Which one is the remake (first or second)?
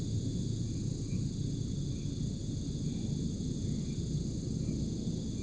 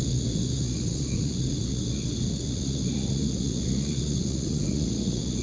second